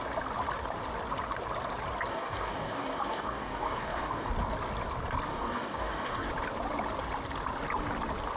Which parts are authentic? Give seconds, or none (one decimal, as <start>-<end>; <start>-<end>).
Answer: 0.0-2.1; 4.3-5.3; 6.3-8.4

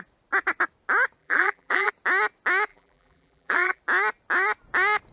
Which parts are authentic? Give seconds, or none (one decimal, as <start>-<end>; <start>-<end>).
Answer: 0.0-1.2; 1.9-2.7; 3.8-5.1

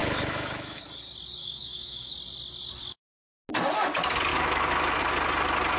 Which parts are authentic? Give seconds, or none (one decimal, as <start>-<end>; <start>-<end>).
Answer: 0.8-1.4; 2.1-4.3; 5.0-5.8

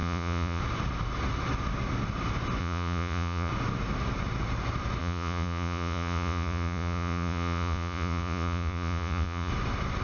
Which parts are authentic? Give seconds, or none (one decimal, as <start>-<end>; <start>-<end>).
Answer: 0.6-2.6; 3.5-5.0; 9.5-10.0

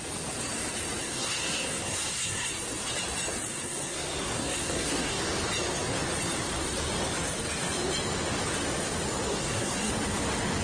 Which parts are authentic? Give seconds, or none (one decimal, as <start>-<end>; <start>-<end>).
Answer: 0.0-1.0; 2.5-3.5; 5.2-9.3; 9.9-10.6

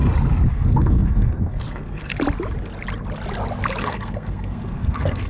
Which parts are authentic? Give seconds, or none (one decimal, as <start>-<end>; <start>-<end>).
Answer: 0.0-0.5; 2.1-3.8

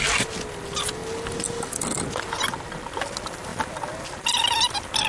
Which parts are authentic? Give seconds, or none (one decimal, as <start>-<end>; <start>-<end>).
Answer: 0.0-5.1